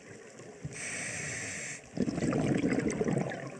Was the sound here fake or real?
real